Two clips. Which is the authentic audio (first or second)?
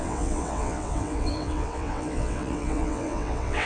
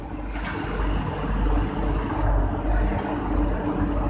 second